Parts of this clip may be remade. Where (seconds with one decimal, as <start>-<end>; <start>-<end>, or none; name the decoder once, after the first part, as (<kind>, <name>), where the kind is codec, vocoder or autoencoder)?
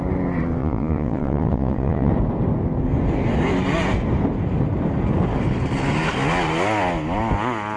0.6-2.1 (vocoder, Vocos)